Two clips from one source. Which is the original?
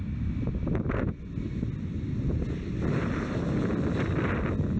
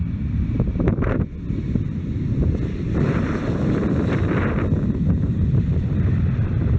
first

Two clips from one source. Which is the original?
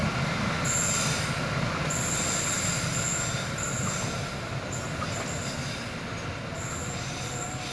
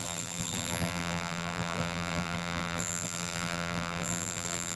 first